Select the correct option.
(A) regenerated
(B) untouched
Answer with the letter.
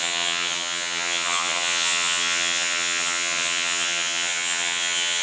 A